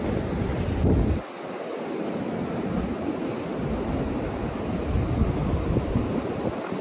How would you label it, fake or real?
real